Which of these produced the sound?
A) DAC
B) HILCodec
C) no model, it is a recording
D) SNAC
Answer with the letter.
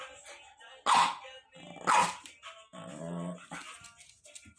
C